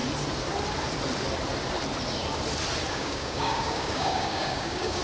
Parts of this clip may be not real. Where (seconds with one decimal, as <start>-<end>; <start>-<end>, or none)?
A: 2.9-5.0